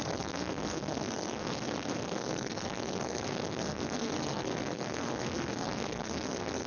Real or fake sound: fake